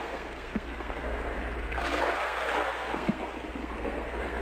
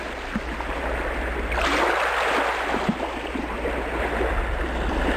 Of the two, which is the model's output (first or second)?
first